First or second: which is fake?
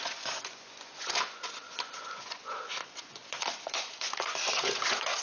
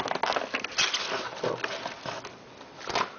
first